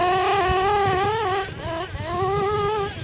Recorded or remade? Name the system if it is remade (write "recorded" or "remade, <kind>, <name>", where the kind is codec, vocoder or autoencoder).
recorded